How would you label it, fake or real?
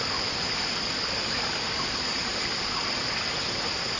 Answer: real